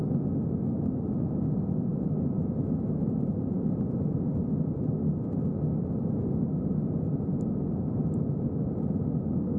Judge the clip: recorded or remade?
recorded